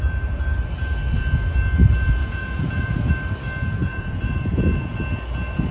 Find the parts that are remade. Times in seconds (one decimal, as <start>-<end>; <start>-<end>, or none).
2.2-3.1; 3.8-4.9